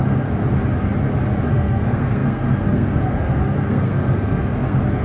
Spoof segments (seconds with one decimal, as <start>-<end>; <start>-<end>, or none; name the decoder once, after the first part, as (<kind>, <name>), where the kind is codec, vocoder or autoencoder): 0.0-0.4 (codec, SNAC); 1.5-5.0